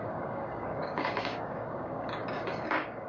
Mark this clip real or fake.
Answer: fake